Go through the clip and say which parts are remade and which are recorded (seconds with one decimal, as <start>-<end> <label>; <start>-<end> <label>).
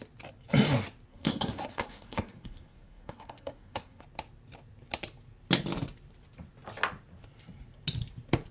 0.0-1.1 recorded; 1.1-4.0 remade; 4.0-8.5 recorded